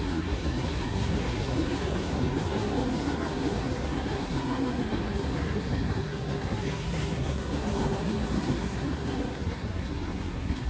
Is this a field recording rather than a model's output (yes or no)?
no